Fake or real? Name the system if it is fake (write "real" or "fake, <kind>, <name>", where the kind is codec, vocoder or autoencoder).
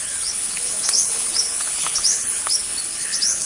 fake, codec, HILCodec